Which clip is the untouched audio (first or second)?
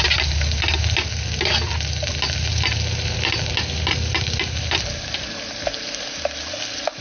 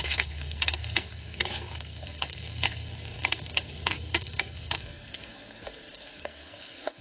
first